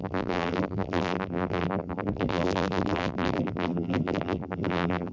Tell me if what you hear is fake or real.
fake